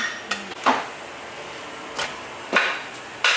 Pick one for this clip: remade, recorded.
recorded